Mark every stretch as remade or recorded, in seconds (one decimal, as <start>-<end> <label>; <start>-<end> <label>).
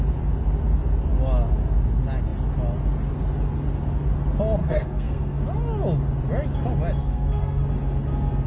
0.0-4.6 recorded; 4.6-5.4 remade; 5.4-7.0 recorded; 7.0-7.6 remade; 7.6-8.5 recorded